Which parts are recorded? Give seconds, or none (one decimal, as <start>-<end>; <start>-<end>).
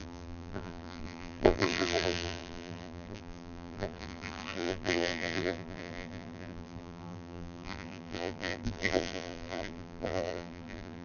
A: none